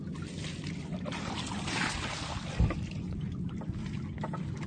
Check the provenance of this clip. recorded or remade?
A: recorded